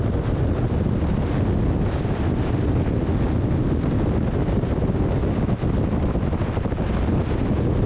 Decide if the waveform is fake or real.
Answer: real